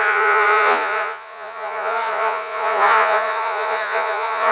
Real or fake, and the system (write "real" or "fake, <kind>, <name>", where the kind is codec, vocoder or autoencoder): fake, vocoder, Vocos